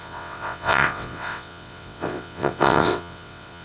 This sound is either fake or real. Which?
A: fake